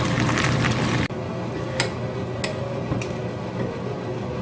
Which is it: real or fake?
real